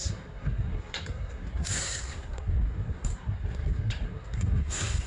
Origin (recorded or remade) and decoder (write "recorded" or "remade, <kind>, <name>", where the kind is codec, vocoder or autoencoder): remade, codec, SNAC